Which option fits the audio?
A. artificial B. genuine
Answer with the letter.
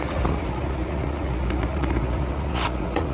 A